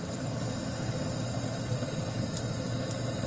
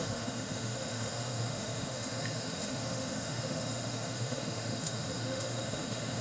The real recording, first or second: first